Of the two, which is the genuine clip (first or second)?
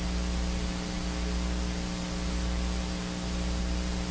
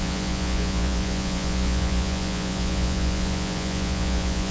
first